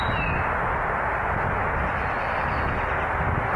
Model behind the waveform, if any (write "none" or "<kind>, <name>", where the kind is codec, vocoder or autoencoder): none